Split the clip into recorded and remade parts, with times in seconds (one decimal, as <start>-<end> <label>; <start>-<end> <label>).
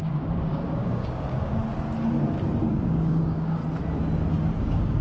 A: 0.0-1.6 remade; 1.6-2.6 recorded; 2.6-3.6 remade; 3.6-4.6 recorded; 4.6-5.0 remade